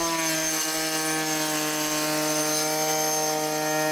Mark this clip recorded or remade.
recorded